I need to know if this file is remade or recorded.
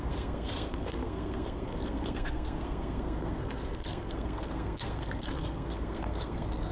remade